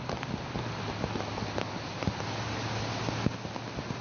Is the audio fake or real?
real